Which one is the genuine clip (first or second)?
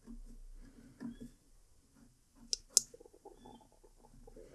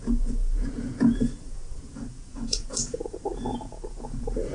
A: first